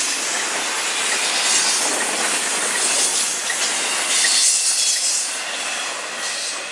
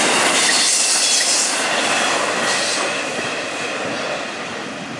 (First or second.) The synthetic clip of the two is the second